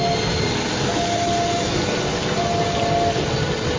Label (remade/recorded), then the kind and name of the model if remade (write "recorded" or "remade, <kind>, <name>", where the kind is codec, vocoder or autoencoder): recorded